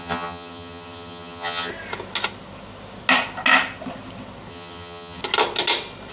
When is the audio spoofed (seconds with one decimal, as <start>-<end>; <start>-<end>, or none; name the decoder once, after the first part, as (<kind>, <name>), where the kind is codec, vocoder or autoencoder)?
0.0-1.7 (vocoder, HiFi-GAN); 4.5-5.2